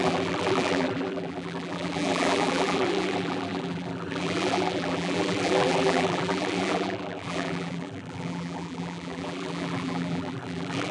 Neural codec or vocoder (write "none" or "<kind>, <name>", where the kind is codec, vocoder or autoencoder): vocoder, BigVGAN v2